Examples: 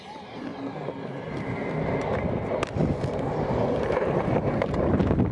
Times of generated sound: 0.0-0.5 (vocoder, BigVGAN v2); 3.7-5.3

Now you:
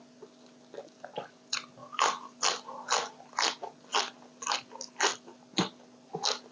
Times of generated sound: 1.8-2.4 (vocoder, BigVGAN v2)

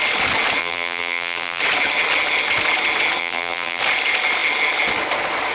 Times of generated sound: 0.6-1.6 (vocoder, BigVGAN v2); 3.2-3.8

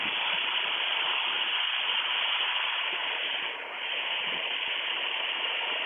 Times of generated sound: 1.4-4.9 (vocoder, BigVGAN v2)

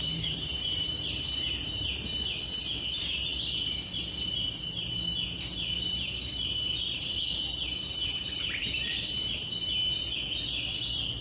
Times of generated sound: 0.0-1.9 (vocoder, BigVGAN v2); 8.6-9.7

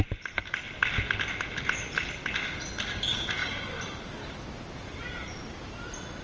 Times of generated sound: 3.4-4.1 (vocoder, BigVGAN v2)